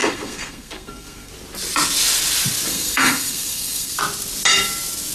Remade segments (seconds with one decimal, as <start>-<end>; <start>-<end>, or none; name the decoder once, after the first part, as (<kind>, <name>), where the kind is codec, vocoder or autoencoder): 0.0-1.3 (codec, SNAC); 2.7-4.0

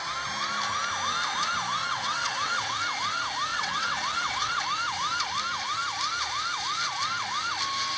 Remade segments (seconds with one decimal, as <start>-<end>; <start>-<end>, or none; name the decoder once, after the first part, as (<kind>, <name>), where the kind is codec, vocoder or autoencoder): 1.8-2.8 (vocoder, WaveNeXt); 3.5-4.6

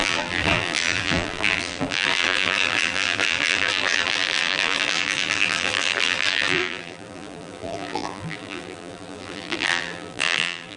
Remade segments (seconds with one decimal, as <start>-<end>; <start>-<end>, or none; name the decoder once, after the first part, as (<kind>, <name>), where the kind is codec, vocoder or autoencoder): 0.0-10.8 (vocoder, BigVGAN v2)

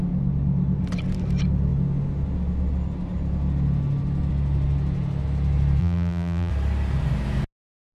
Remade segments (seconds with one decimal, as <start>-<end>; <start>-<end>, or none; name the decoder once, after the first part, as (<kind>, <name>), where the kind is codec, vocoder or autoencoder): 5.8-6.5 (vocoder, BigVGAN v2)

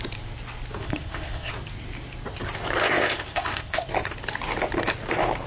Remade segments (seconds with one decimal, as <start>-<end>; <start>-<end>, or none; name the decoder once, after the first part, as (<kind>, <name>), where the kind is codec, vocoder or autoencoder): 0.8-1.5 (codec, ZipCodec); 2.8-3.9

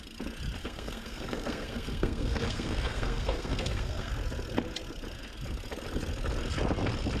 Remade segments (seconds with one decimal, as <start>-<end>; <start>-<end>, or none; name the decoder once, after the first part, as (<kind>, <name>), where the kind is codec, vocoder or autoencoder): 0.6-4.1 (codec, SNAC)

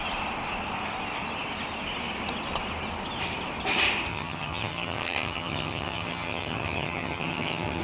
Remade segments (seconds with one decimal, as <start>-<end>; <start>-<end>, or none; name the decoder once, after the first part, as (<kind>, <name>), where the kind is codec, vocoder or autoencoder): 4.1-7.8 (vocoder, HiFi-GAN)